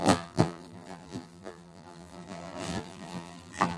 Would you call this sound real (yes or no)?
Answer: no